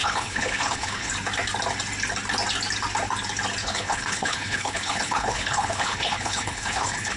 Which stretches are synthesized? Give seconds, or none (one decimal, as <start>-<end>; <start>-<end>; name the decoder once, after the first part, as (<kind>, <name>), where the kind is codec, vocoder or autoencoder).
0.0-1.1 (codec, HILCodec); 3.6-7.2